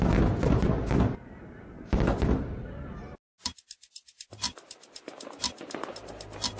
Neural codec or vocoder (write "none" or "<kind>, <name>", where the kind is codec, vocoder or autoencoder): none